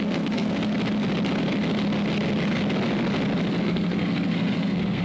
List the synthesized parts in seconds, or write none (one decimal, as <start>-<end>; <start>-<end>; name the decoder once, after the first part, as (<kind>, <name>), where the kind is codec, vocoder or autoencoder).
0.0-0.6 (codec, SNAC); 3.6-5.0